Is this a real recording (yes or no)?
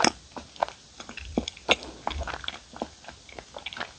yes